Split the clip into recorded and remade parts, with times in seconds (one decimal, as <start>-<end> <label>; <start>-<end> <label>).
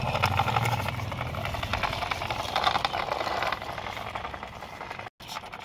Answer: 0.0-5.6 recorded